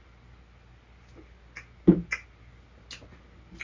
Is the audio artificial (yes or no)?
no